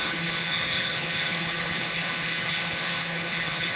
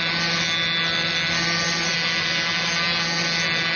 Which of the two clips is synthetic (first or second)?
first